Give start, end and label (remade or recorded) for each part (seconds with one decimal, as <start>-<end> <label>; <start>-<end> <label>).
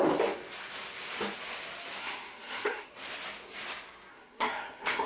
0.0-2.0 recorded; 2.0-2.9 remade; 2.9-4.1 recorded; 4.1-5.1 remade